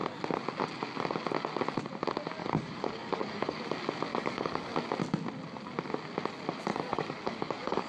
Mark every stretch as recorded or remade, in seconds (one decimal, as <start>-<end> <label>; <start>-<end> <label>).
0.0-2.4 recorded; 2.4-3.6 remade; 3.6-4.1 recorded; 4.1-4.7 remade; 4.7-6.7 recorded; 6.7-7.9 remade